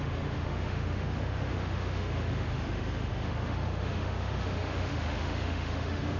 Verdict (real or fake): fake